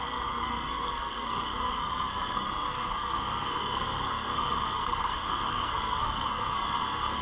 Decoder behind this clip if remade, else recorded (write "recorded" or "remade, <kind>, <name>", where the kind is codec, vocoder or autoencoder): remade, codec, SNAC